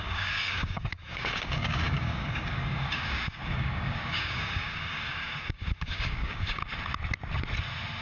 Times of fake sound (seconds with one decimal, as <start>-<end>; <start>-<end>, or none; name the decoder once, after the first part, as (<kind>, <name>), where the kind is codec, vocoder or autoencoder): 0.0-6.6 (codec, DAC)